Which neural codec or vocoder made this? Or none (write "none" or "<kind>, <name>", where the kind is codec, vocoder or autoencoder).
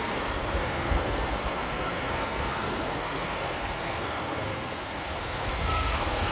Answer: codec, SNAC